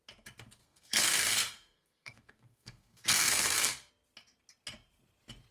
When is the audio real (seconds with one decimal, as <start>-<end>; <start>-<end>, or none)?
0.0-0.6; 3.9-5.5